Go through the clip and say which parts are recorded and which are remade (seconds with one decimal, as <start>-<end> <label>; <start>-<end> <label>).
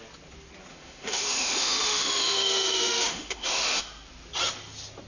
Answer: 0.0-0.7 recorded; 0.7-3.8 remade; 3.8-5.1 recorded